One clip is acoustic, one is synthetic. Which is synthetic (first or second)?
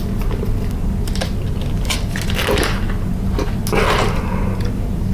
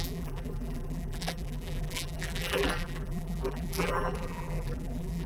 second